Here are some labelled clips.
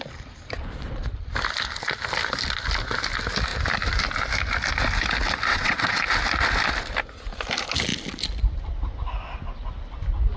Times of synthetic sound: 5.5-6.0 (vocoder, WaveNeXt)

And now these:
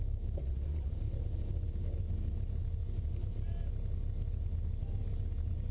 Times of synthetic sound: 0.4-0.9 (vocoder, Vocos)